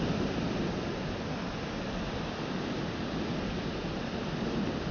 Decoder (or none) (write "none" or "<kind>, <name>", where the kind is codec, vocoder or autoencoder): none